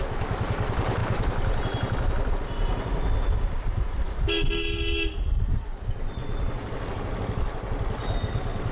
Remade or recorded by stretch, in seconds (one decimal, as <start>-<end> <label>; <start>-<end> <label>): 0.0-8.7 recorded